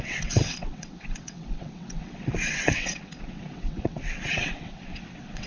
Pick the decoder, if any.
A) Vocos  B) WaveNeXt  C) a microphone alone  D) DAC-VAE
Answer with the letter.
B